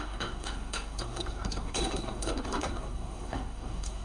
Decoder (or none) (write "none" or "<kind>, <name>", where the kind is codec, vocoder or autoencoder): codec, SNAC